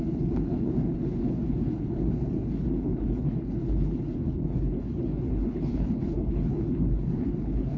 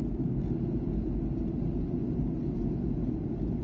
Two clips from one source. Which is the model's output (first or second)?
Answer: first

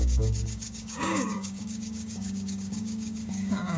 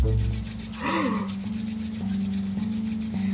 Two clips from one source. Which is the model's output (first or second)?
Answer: first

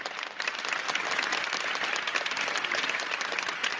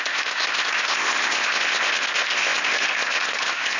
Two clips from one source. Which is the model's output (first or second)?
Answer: second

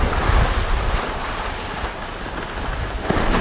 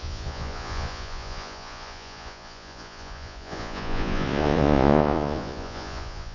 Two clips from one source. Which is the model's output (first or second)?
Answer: second